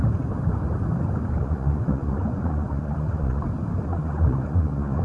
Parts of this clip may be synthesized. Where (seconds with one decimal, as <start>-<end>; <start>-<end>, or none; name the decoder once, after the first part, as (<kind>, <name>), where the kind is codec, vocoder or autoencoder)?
1.4-3.4 (vocoder, Vocos); 3.9-5.0